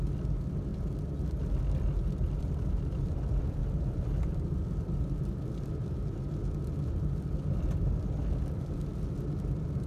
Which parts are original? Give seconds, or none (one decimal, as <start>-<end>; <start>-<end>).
0.7-2.4